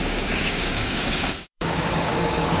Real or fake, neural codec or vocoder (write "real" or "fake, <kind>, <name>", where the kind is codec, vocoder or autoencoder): fake, codec, DAC